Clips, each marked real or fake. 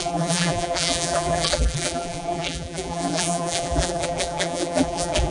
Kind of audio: fake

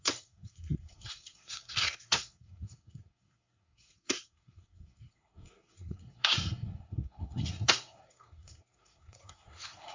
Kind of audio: fake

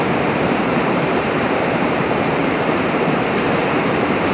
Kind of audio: fake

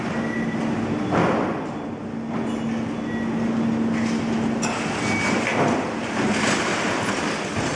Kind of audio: real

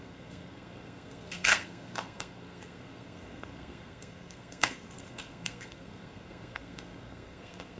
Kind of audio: fake